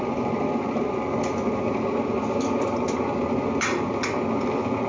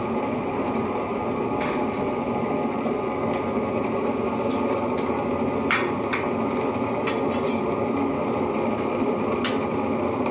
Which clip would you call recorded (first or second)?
second